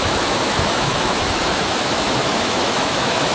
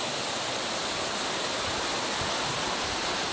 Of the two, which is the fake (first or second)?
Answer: first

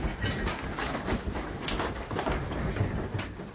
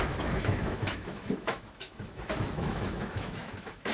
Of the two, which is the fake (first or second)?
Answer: second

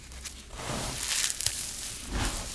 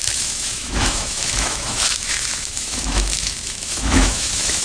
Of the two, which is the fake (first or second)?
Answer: second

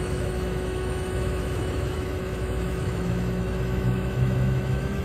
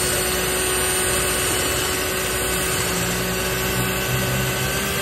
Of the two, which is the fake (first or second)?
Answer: first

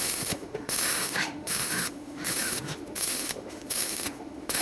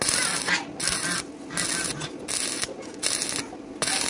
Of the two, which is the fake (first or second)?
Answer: first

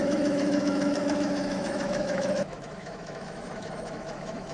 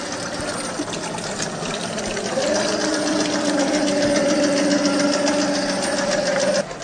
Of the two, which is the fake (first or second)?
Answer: first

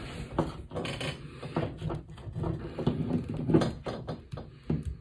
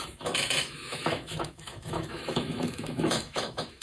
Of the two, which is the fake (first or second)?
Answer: second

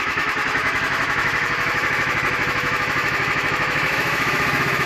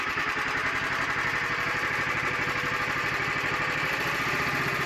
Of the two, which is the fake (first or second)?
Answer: first